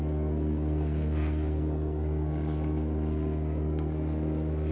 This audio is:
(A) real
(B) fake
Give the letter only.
B